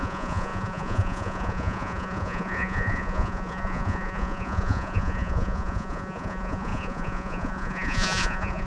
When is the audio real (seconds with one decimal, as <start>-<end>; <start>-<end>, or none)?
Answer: none